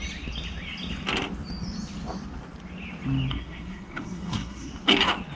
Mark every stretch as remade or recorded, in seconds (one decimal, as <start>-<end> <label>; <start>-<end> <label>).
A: 0.0-3.3 recorded; 3.3-4.7 remade; 4.7-5.4 recorded